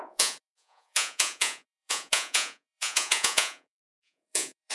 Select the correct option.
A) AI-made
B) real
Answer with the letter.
A